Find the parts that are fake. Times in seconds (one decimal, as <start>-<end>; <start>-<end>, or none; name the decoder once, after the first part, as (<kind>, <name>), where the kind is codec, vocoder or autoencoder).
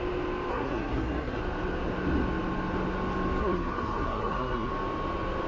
0.5-1.4 (codec, SNAC); 3.4-4.7